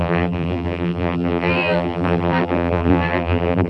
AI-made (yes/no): yes